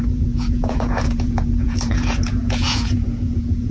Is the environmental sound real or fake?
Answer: fake